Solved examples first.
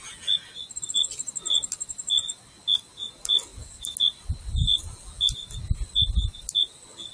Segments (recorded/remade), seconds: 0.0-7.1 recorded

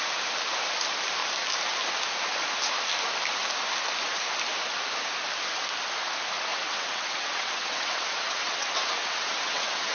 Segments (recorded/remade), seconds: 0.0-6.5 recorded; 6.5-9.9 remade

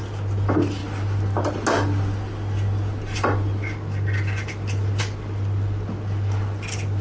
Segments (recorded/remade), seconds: 0.0-7.0 recorded

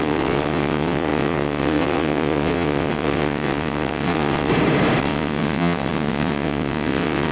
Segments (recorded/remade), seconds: 0.0-4.5 remade; 4.5-5.0 recorded; 5.0-7.3 remade

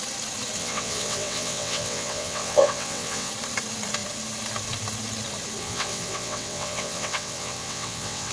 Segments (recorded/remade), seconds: 0.0-0.6 recorded; 0.6-3.3 remade; 3.3-5.6 recorded; 5.6-8.3 remade

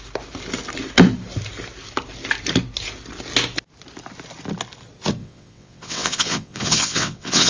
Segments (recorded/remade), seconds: 0.0-5.2 recorded; 5.2-7.5 remade